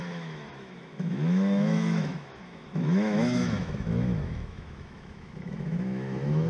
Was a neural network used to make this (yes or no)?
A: yes